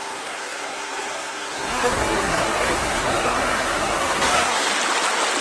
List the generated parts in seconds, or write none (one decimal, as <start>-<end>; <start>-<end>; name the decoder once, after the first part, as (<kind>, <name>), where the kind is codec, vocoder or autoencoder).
0.0-4.7 (codec, SNAC)